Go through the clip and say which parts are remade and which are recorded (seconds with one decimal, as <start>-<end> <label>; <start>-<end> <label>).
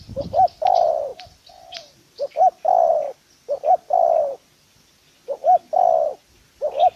0.0-7.0 recorded